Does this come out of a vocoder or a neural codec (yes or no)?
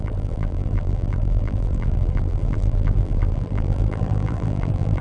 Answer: yes